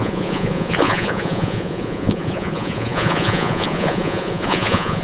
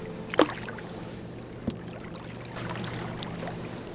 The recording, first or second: second